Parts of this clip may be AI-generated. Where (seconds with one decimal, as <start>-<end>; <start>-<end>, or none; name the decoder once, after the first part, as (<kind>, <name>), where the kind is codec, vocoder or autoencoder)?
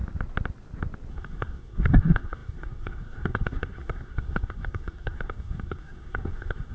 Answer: 1.1-6.7 (codec, SNAC)